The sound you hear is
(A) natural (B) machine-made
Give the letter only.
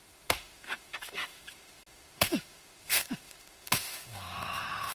B